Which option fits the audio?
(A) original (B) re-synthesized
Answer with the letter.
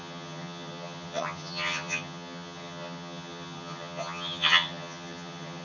B